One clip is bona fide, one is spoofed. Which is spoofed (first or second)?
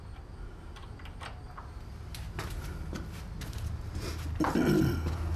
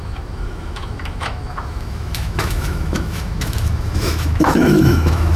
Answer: second